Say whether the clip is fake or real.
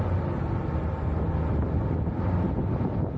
real